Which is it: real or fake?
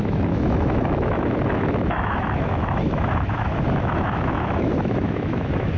fake